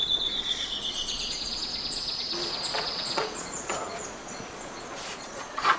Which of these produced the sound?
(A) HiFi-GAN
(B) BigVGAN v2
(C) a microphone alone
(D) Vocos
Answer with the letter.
D